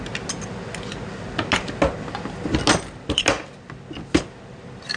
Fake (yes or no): no